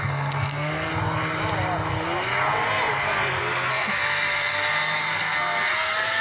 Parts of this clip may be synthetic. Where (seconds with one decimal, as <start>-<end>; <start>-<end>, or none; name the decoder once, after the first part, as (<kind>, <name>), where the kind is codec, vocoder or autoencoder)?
0.0-0.9 (codec, SNAC); 3.7-6.2